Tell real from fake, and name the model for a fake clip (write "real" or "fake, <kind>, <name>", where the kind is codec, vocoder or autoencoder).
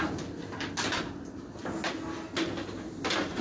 real